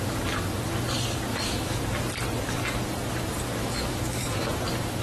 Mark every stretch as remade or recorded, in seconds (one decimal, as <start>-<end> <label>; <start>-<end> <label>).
0.0-1.3 recorded; 1.3-1.8 remade; 1.8-3.6 recorded; 3.6-4.5 remade; 4.5-5.0 recorded